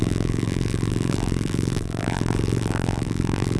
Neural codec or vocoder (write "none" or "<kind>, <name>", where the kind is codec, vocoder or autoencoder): vocoder, BigVGAN v2